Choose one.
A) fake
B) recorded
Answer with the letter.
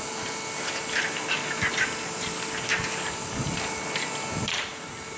B